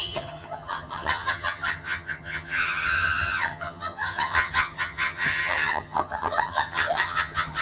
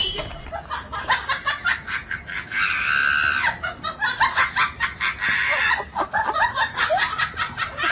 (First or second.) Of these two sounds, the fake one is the first